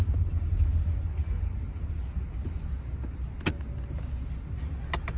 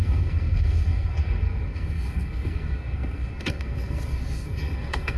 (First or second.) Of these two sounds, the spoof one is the second